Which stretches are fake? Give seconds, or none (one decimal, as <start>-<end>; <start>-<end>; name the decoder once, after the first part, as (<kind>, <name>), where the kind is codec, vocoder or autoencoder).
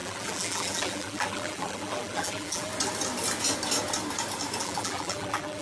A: 0.0-2.7 (vocoder, BigVGAN v2); 4.6-5.6